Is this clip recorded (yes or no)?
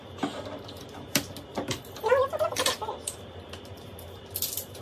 yes